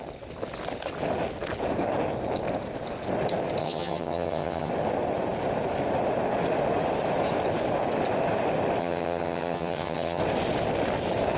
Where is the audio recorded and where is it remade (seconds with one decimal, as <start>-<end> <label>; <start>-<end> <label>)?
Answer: 0.0-3.6 recorded; 3.6-4.7 remade; 4.7-8.8 recorded; 8.8-10.2 remade; 10.2-11.4 recorded